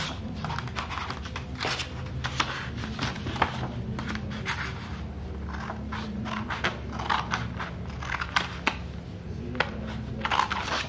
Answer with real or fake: real